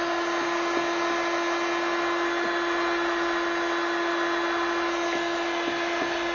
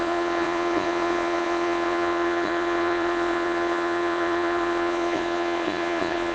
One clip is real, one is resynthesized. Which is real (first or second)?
first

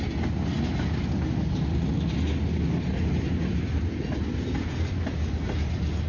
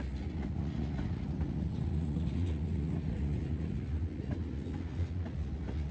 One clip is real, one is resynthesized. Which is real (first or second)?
first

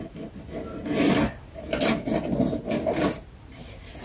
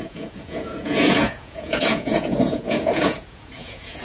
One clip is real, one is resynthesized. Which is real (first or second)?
first